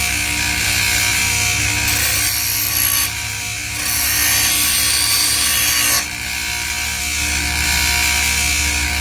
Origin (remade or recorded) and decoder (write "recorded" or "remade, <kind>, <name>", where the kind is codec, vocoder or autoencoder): recorded